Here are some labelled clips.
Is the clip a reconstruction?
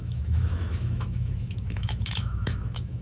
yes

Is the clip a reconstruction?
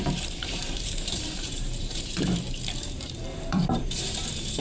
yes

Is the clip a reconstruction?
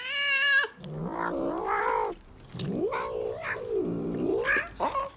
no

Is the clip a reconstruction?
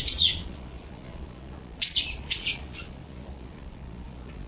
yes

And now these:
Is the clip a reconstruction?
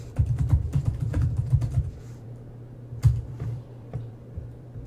yes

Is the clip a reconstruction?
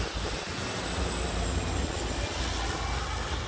no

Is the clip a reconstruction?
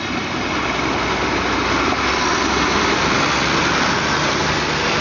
no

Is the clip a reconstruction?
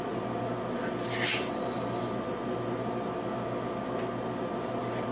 no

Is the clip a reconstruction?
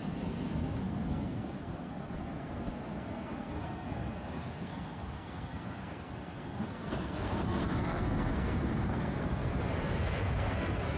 yes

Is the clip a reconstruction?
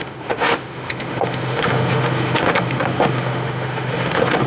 yes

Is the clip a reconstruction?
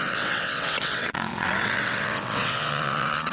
yes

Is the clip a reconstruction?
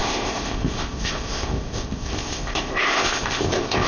yes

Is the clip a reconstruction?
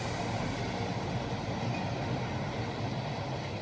no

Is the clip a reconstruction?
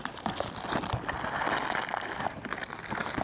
no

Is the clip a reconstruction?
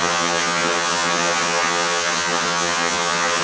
yes